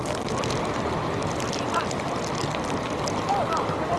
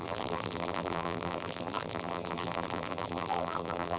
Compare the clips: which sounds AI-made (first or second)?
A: second